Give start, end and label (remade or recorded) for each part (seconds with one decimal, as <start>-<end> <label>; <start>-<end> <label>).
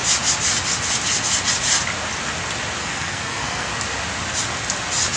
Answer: 0.0-2.8 recorded; 2.8-3.7 remade; 3.7-5.2 recorded